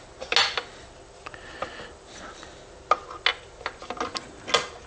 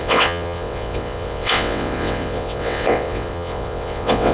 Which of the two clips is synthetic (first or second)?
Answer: second